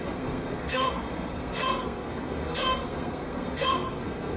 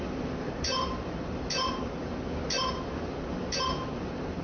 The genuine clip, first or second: second